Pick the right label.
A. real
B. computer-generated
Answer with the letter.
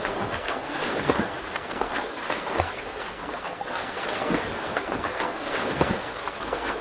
B